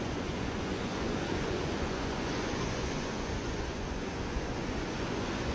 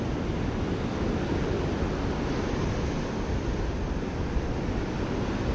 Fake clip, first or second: first